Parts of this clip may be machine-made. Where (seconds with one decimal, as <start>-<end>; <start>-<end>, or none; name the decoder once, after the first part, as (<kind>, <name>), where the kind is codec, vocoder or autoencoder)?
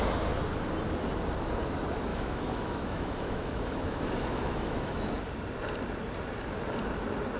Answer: 2.1-5.2 (autoencoder, DAC-VAE)